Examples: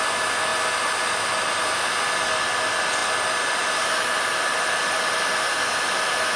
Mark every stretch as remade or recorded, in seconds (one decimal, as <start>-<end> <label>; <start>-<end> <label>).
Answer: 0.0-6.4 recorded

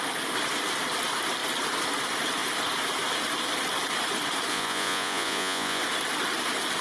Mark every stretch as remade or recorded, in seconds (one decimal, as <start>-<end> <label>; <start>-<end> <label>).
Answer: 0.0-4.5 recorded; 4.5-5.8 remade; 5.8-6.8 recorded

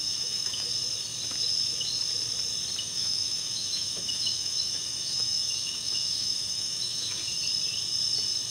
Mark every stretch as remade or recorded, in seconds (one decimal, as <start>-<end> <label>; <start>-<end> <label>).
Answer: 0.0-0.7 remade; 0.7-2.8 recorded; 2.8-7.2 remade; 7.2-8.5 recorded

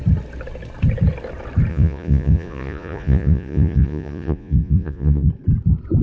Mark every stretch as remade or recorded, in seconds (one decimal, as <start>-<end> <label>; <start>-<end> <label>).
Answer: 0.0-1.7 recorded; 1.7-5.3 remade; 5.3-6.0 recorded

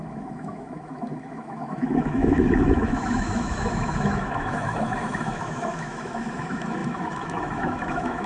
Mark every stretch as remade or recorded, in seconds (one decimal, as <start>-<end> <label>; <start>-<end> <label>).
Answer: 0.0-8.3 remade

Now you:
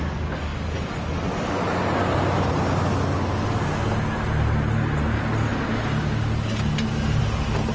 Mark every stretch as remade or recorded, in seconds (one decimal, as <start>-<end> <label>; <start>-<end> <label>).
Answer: 0.0-7.7 recorded

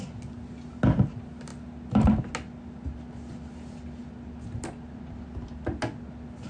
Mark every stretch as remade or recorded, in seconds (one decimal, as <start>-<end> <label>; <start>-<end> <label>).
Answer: 0.0-6.5 recorded